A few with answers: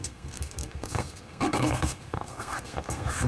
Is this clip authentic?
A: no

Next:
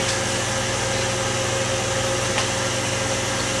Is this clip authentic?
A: yes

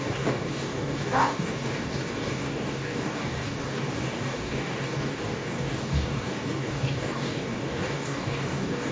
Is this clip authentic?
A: no